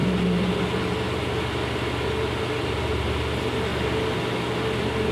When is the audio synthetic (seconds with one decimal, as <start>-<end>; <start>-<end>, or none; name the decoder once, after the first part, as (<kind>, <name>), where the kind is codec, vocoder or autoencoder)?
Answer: none

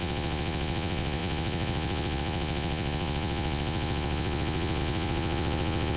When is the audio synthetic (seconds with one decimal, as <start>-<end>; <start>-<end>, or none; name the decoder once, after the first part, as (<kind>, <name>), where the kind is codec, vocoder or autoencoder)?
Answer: 0.0-6.0 (vocoder, Vocos)

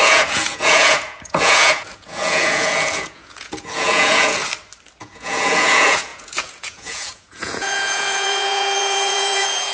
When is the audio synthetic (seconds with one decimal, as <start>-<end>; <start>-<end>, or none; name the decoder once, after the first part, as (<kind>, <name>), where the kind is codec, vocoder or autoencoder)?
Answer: 0.0-4.4 (vocoder, Vocos); 5.0-9.7

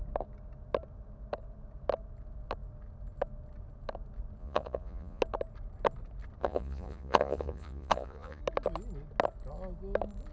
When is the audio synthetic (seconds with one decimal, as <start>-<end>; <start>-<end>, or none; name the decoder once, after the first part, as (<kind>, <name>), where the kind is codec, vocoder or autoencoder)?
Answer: 4.4-5.2 (vocoder, Vocos); 6.4-8.4

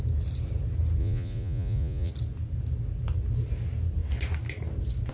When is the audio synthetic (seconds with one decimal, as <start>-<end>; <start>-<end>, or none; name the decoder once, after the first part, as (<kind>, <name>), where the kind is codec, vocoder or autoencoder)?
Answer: 1.0-2.1 (vocoder, Vocos)

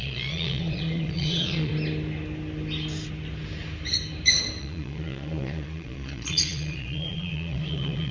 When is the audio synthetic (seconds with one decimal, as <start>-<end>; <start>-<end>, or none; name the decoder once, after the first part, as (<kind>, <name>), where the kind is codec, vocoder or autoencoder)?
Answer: 0.0-1.7 (vocoder, Vocos); 4.6-8.1

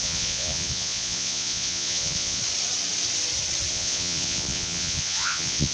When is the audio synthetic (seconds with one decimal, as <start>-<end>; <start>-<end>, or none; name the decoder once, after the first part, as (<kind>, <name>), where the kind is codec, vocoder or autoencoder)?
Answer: 0.0-2.4 (vocoder, Vocos); 3.7-5.7